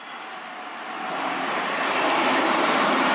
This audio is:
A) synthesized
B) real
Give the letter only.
B